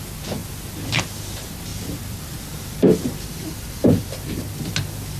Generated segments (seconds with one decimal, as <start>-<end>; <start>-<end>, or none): 1.7-4.7